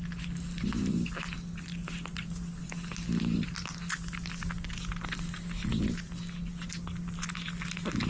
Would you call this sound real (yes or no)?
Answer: yes